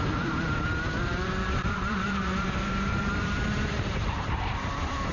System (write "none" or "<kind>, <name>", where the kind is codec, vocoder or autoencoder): vocoder, BigVGAN v2